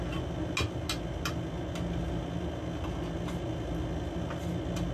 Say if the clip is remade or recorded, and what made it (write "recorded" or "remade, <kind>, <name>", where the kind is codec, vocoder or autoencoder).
recorded